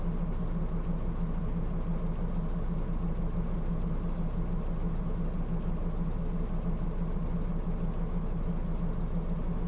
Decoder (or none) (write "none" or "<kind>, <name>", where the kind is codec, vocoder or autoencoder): none